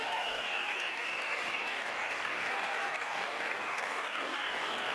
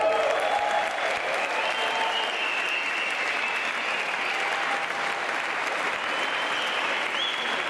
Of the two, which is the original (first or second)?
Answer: second